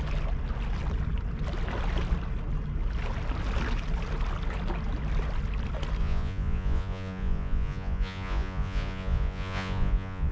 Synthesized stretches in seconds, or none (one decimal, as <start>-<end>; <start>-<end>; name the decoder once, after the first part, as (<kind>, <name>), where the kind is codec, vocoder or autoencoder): 6.0-10.3 (vocoder, Vocos)